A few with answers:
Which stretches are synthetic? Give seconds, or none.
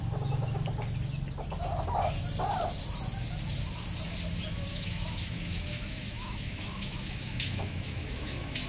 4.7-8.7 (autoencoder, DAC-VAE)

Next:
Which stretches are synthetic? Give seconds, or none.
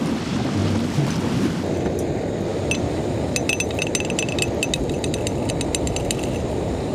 none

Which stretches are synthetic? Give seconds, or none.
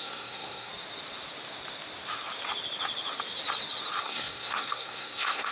0.0-0.7 (codec, SNAC); 4.0-5.5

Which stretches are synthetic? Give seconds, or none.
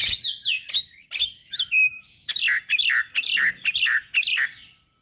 1.4-2.3 (autoencoder, DAC-VAE)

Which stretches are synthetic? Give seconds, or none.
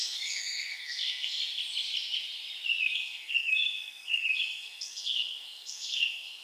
0.0-1.4 (codec, SNAC); 2.8-6.4